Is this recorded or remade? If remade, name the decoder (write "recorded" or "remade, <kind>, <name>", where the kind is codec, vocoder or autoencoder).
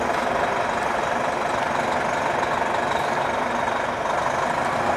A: recorded